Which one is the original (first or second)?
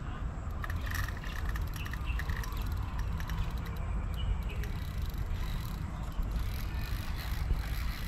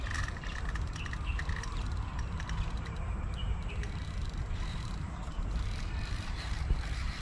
first